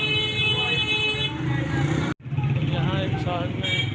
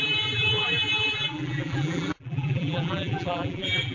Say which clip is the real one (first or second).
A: first